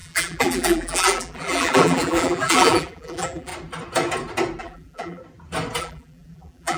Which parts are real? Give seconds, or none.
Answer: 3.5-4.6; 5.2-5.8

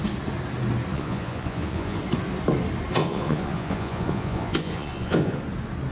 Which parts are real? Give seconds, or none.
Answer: 0.0-0.9; 2.0-3.0; 5.4-5.9

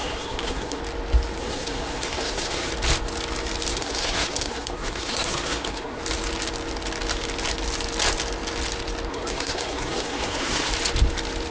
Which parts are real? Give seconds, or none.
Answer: 0.8-1.4; 2.7-3.7; 6.0-9.1; 10.7-11.5

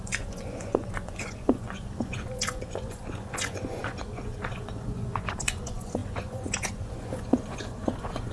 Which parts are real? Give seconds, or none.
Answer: none

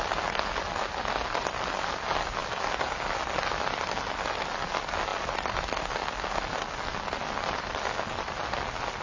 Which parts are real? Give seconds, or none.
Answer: 0.0-9.0

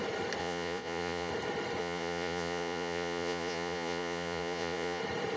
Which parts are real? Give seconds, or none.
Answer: 0.0-0.4; 1.3-1.8; 5.0-5.4

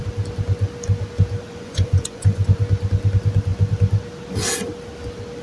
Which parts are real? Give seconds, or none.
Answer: 0.0-1.5; 2.6-5.4

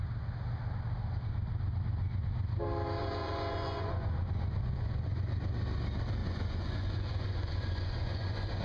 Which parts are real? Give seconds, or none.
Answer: 0.0-3.0; 5.2-6.2